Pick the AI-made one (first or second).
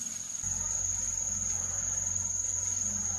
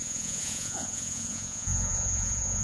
second